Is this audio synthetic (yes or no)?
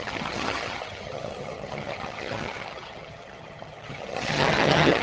yes